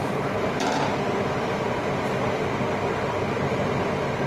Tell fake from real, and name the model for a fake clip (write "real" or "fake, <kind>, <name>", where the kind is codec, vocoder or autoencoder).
real